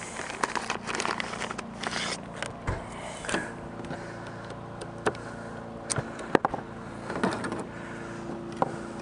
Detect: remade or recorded recorded